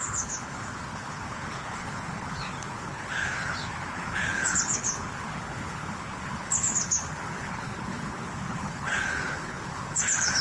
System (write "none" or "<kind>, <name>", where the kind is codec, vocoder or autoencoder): codec, HILCodec